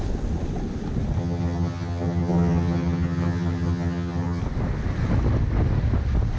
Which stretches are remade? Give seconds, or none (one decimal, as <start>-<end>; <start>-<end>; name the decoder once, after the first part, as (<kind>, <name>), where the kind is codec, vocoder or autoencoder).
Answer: 1.2-4.4 (vocoder, HiFi-GAN)